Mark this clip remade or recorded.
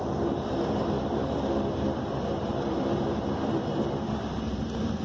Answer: remade